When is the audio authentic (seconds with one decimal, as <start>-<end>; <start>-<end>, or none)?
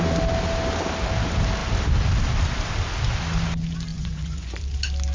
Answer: 0.0-3.9; 4.6-5.1